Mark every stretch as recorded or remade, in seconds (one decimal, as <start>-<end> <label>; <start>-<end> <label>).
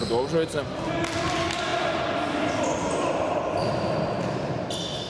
0.0-1.7 recorded; 1.7-5.1 remade